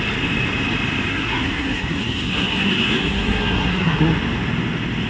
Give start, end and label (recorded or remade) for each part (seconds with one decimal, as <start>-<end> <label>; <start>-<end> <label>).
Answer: 0.0-1.1 recorded; 1.1-4.0 remade; 4.0-5.1 recorded